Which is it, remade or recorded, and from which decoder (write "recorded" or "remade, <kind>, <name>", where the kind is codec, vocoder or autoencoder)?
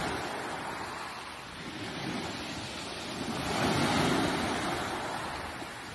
recorded